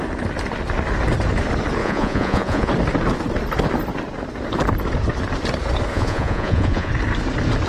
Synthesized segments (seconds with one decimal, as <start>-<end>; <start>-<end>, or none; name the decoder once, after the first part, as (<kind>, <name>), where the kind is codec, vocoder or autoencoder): 1.8-2.7 (vocoder, Vocos); 5.9-6.9